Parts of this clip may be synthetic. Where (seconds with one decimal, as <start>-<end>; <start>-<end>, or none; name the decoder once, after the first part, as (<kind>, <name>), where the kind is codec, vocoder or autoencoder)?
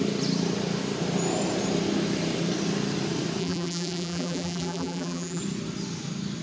3.4-5.4 (vocoder, BigVGAN v2)